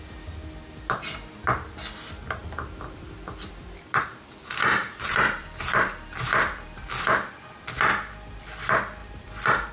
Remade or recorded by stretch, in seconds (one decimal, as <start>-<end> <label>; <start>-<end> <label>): 0.0-2.4 recorded; 2.4-5.9 remade; 5.9-9.0 recorded; 9.0-9.7 remade